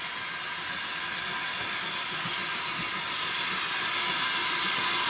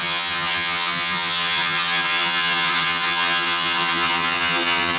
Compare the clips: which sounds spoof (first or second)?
second